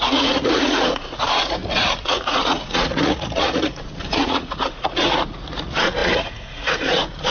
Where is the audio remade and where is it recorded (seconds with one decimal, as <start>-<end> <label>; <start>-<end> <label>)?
0.0-7.3 remade